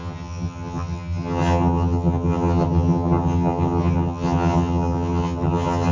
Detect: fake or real fake